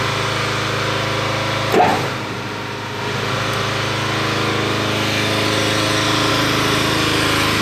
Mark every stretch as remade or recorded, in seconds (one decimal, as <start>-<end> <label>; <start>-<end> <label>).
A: 0.0-7.6 recorded